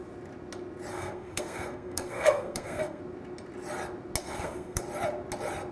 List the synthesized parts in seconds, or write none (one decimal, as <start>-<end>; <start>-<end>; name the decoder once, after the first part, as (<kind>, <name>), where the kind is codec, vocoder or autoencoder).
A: 0.9-3.0 (codec, SNAC); 4.2-4.8